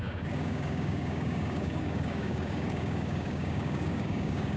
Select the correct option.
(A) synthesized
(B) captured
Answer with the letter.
A